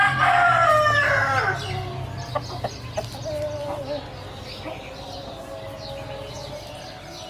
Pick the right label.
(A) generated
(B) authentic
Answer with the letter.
B